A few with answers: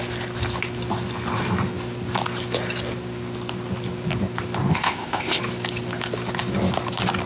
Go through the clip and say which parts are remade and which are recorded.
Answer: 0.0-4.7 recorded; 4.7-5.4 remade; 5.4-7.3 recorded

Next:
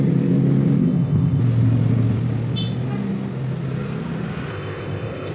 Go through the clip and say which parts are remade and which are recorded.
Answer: 0.0-0.8 recorded; 0.8-1.4 remade; 1.4-4.5 recorded; 4.5-5.3 remade

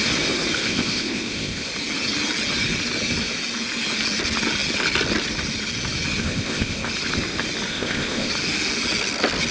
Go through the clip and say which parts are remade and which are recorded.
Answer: 0.0-0.6 recorded; 0.6-1.7 remade; 1.7-6.2 recorded; 6.2-6.9 remade; 6.9-7.7 recorded; 7.7-8.3 remade; 8.3-9.5 recorded

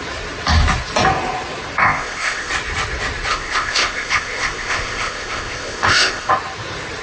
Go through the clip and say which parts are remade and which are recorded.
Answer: 0.0-1.8 recorded; 1.8-2.5 remade; 2.5-3.3 recorded; 3.3-6.3 remade; 6.3-7.0 recorded

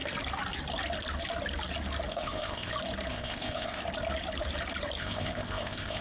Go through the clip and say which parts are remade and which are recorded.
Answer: 0.0-2.1 recorded; 2.1-2.7 remade; 2.7-3.1 recorded; 3.1-3.8 remade; 3.8-5.0 recorded; 5.0-6.0 remade